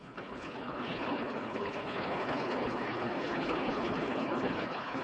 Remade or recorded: remade